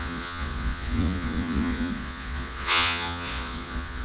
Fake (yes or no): yes